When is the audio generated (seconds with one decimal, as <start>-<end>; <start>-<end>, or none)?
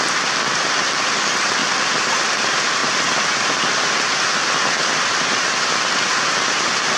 none